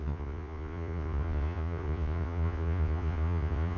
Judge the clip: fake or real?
fake